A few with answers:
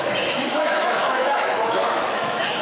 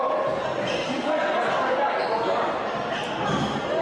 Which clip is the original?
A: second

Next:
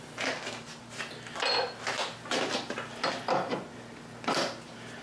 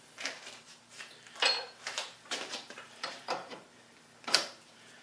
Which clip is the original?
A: first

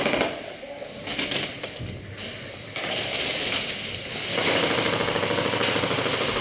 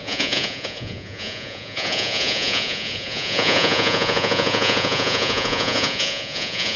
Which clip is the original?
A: first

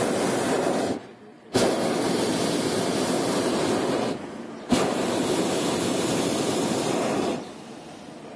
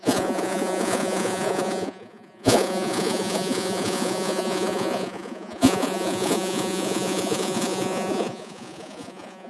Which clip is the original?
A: first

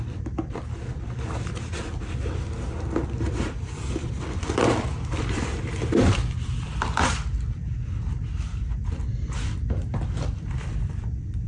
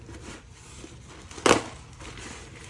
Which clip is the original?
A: second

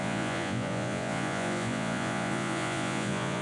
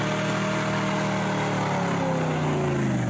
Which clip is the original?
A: second